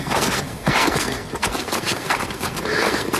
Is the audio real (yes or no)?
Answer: no